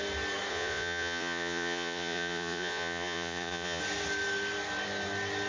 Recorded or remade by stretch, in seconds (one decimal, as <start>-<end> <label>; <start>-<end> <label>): 0.0-0.5 recorded; 0.5-3.8 remade; 3.8-5.5 recorded